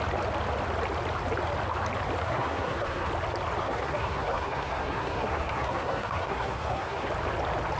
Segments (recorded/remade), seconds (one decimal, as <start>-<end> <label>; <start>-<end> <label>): 0.0-2.2 recorded; 2.2-3.1 remade; 3.1-3.6 recorded; 3.6-7.1 remade; 7.1-7.8 recorded